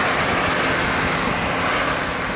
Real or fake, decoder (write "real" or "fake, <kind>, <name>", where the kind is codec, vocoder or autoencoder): real